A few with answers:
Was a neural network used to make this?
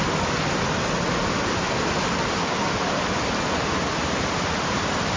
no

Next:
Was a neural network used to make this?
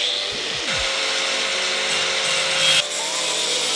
no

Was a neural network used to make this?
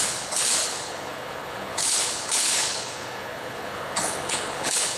yes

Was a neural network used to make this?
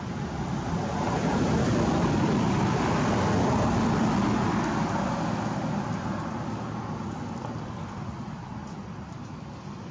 no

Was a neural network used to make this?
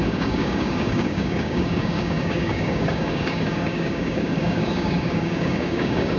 yes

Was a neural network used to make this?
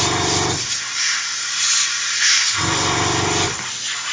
no